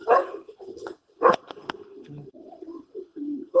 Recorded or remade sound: remade